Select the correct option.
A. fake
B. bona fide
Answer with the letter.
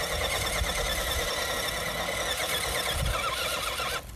B